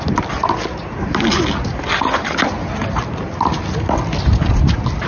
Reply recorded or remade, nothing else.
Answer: recorded